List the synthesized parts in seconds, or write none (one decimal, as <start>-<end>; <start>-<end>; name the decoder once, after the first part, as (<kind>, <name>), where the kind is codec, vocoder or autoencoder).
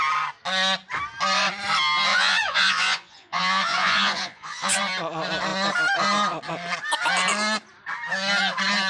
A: 2.1-4.8 (vocoder, Vocos)